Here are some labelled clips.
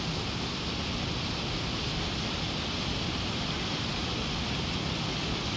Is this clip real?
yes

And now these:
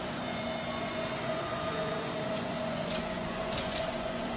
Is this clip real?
no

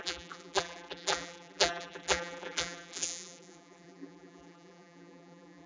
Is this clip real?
no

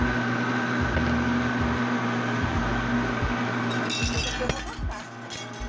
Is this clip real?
yes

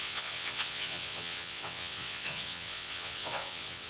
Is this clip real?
no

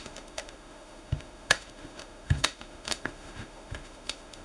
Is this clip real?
no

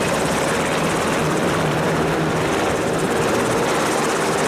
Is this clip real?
no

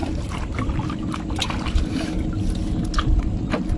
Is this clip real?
yes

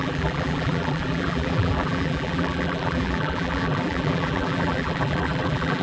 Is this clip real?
no